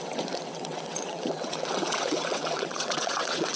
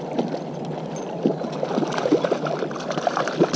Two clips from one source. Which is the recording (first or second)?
second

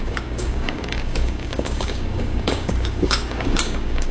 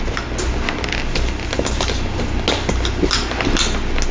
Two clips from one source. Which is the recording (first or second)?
second